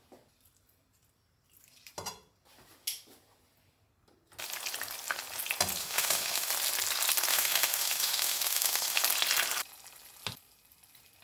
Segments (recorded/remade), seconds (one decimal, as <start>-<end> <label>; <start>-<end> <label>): 0.0-5.8 recorded; 5.8-6.5 remade; 6.5-7.3 recorded; 7.3-9.0 remade; 9.0-11.2 recorded